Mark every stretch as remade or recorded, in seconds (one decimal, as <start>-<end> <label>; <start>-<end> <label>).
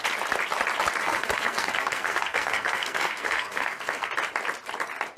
0.0-1.0 recorded; 1.0-4.1 remade; 4.1-5.2 recorded